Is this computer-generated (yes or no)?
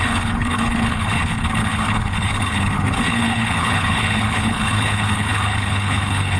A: yes